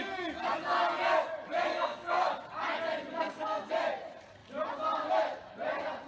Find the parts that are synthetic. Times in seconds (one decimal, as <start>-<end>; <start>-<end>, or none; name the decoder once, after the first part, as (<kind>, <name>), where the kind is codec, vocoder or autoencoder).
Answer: 1.7-2.3 (codec, SNAC); 3.1-3.7